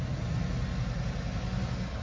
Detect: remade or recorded recorded